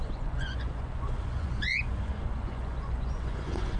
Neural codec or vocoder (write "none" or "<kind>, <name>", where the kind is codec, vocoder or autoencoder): vocoder, Vocos